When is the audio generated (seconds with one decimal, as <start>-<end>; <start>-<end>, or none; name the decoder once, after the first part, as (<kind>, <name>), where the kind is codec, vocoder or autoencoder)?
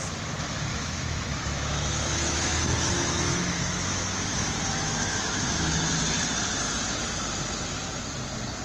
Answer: 0.7-5.9 (autoencoder, DAC-VAE)